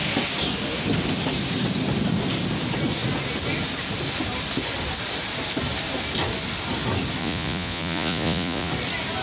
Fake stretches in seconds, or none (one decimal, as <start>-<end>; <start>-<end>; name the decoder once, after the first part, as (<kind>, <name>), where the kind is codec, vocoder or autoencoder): 7.2-8.7 (vocoder, Vocos)